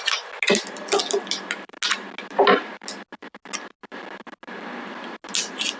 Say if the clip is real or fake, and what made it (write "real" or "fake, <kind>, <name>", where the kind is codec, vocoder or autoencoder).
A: real